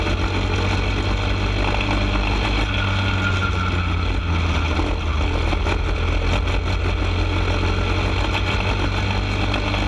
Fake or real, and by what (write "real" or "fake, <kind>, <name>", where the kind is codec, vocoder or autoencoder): real